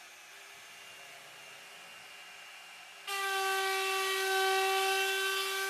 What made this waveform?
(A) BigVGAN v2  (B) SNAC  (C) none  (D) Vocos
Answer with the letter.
C